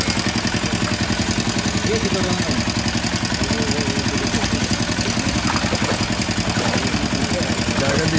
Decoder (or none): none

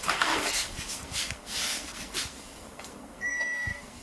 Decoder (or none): codec, SNAC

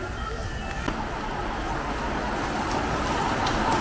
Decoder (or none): none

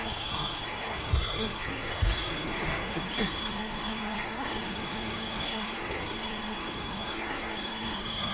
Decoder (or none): codec, SNAC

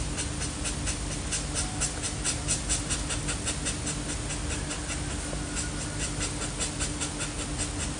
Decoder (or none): none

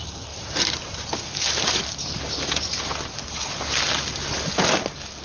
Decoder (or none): none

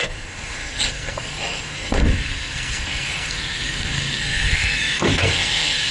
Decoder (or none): codec, SNAC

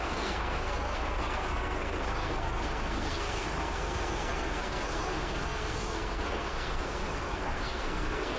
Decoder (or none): codec, SNAC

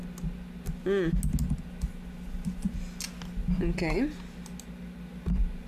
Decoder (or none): none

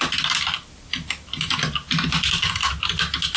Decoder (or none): none